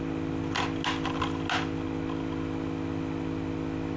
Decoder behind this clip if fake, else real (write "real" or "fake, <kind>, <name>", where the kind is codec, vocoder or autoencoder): real